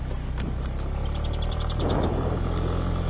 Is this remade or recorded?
recorded